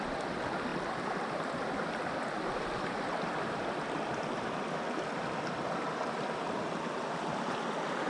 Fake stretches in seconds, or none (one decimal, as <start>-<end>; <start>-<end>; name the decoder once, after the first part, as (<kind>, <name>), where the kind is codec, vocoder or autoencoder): 0.7-5.4 (vocoder, BigVGAN v2)

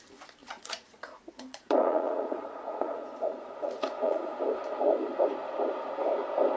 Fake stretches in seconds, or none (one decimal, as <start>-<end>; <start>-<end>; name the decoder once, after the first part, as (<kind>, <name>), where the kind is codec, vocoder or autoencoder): 0.4-4.4 (vocoder, Vocos)

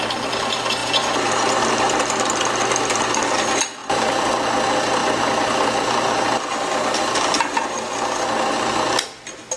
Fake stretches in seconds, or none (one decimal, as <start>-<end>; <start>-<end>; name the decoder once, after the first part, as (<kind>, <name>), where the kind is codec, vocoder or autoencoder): 3.8-4.3 (vocoder, BigVGAN v2)

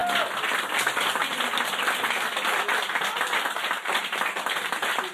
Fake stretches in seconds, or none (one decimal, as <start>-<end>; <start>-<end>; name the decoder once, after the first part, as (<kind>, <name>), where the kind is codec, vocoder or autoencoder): none

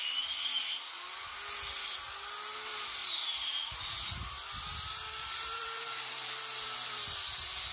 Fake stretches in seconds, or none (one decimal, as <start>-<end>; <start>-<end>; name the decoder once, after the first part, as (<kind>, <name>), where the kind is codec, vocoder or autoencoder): 3.0-7.7 (vocoder, BigVGAN v2)

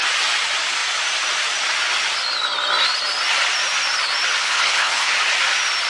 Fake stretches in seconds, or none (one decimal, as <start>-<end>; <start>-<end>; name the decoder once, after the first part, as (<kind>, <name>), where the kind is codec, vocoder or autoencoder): 4.4-5.1 (codec, HILCodec)